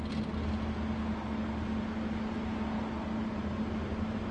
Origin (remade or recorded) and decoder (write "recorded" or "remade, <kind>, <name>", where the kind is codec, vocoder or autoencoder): recorded